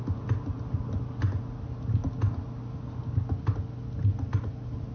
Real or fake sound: real